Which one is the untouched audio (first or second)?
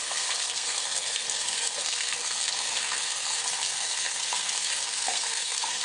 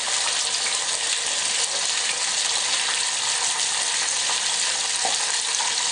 second